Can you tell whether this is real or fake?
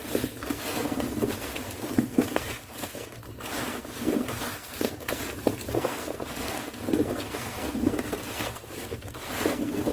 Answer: fake